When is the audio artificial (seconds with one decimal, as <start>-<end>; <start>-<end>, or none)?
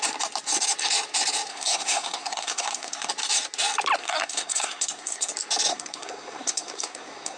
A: 1.5-3.1; 4.0-5.3; 5.7-7.4